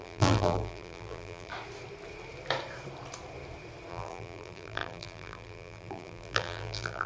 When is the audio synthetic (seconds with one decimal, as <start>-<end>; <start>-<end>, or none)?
0.0-1.5; 3.9-7.1